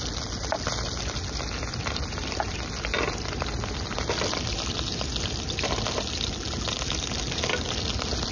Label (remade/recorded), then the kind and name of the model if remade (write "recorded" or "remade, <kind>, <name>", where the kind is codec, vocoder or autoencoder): recorded